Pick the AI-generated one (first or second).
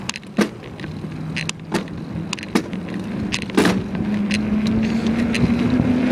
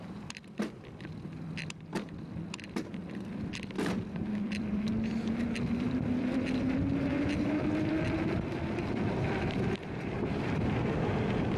second